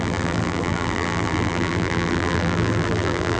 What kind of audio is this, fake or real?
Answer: fake